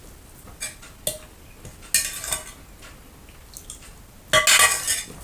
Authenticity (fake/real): real